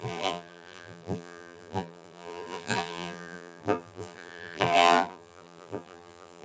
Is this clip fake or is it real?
fake